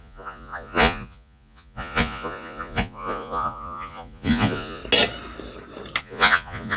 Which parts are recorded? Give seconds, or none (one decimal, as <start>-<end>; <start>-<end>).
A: 4.8-6.0